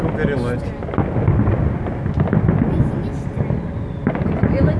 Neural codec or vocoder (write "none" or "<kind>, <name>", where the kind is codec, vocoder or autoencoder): none